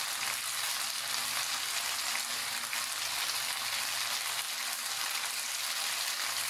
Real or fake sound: real